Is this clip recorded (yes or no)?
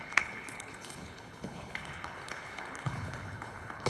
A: no